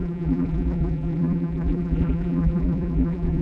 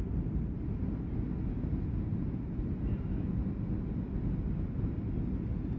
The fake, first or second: first